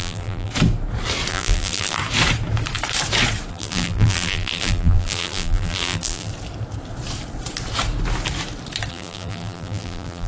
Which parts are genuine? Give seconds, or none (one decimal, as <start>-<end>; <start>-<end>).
0.5-1.3; 2.0-3.5; 6.3-8.9